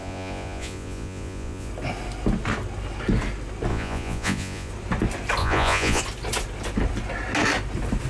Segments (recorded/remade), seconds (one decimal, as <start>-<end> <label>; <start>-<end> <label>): 0.0-1.7 remade; 1.7-3.7 recorded; 3.7-4.7 remade; 4.7-5.4 recorded; 5.4-6.0 remade; 6.0-8.1 recorded